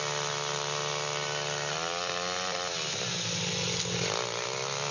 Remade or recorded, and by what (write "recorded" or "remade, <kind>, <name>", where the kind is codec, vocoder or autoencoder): recorded